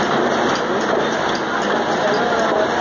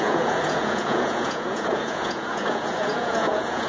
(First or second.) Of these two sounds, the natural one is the first